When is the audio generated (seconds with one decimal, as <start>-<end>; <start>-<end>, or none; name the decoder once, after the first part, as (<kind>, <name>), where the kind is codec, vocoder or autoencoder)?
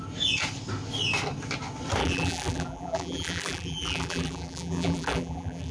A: 2.0-5.7 (vocoder, BigVGAN v2)